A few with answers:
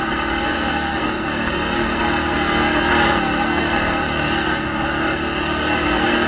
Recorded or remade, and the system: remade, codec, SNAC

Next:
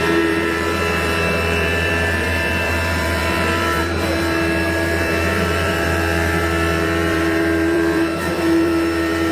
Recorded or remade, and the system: remade, vocoder, BigVGAN v2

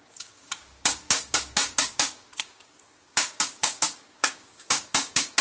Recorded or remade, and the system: remade, codec, DAC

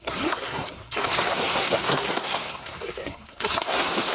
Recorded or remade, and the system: remade, codec, SNAC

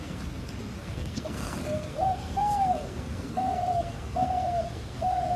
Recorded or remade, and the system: remade, codec, SNAC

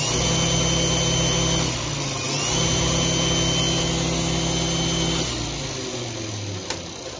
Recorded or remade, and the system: recorded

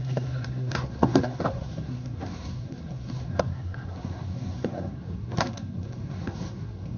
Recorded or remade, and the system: remade, codec, SNAC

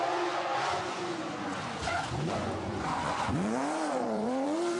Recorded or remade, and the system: remade, vocoder, Vocos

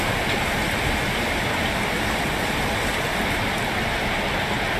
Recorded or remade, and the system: recorded